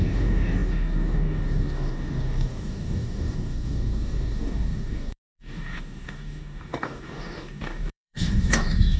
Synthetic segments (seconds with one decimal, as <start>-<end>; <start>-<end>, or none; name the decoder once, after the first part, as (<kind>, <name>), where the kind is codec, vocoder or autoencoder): 0.0-9.0 (codec, DAC)